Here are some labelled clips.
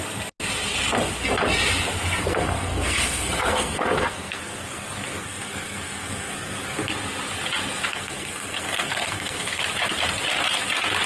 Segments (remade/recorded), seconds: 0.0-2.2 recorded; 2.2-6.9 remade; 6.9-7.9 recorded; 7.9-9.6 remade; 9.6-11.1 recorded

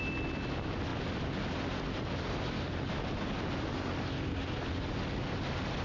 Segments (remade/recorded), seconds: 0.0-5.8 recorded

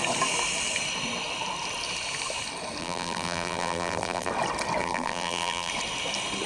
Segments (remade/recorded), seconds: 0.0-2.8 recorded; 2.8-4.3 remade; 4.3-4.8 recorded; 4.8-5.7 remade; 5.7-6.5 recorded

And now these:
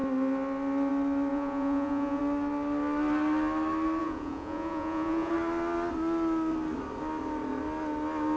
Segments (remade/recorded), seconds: 0.0-1.3 recorded; 1.3-2.2 remade; 2.2-4.0 recorded; 4.0-5.3 remade; 5.3-8.4 recorded

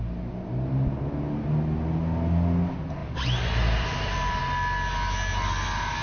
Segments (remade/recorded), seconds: 0.0-3.0 recorded; 3.0-4.4 remade; 4.4-6.0 recorded